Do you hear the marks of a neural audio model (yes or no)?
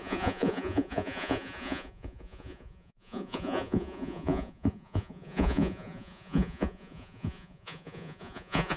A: yes